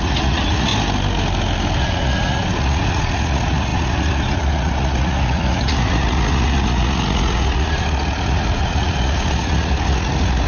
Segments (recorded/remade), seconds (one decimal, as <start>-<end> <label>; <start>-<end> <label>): 0.0-0.7 remade; 0.7-1.8 recorded; 1.8-10.5 remade